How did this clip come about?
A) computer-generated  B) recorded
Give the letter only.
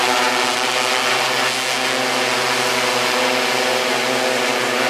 B